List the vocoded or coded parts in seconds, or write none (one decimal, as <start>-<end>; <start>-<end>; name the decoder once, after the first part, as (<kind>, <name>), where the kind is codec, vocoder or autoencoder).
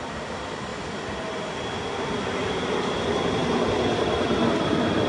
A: none